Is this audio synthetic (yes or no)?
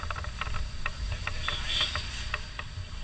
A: no